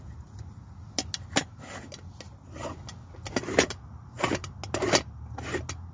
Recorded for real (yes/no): yes